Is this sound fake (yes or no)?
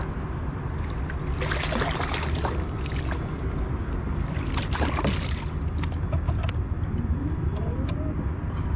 no